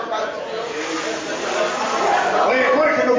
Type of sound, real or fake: real